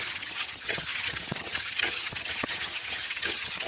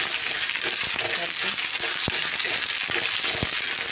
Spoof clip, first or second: first